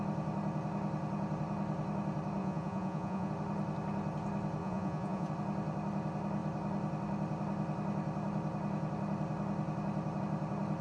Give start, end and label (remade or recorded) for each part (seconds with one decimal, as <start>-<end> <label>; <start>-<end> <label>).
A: 0.0-2.4 recorded; 2.4-3.3 remade; 3.3-4.6 recorded; 4.6-5.3 remade; 5.3-10.8 recorded